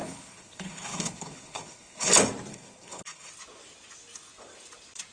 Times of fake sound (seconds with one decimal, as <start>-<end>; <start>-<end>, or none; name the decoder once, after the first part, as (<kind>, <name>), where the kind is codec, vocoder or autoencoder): 0.0-2.1 (codec, HILCodec); 2.5-3.3